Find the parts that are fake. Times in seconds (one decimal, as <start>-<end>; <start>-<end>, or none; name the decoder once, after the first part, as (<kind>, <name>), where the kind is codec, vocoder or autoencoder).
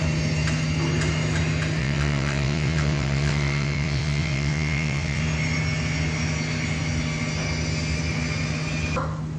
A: 1.8-5.2 (vocoder, WaveNeXt)